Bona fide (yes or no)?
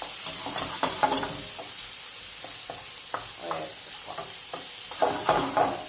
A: yes